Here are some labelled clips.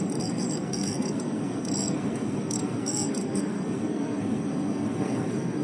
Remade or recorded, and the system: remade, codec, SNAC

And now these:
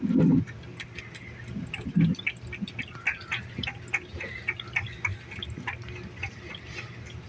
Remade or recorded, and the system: recorded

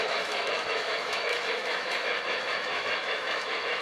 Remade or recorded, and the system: remade, autoencoder, DAC-VAE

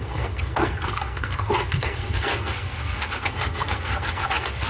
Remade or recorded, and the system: remade, codec, SNAC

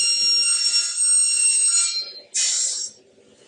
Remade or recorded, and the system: recorded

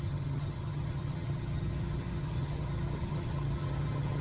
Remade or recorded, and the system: remade, vocoder, HiFi-GAN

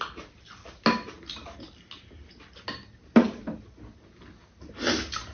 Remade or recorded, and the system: recorded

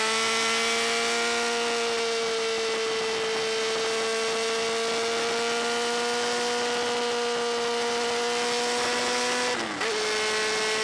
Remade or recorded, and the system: recorded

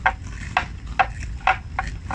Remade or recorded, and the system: recorded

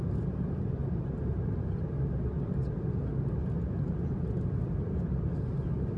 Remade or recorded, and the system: recorded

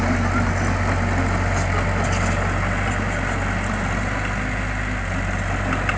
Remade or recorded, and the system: recorded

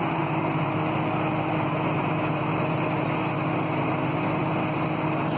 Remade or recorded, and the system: recorded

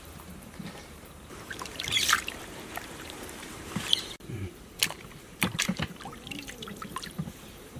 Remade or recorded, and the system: remade, vocoder, BigVGAN v2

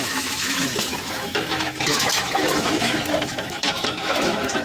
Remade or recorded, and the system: remade, autoencoder, DAC-VAE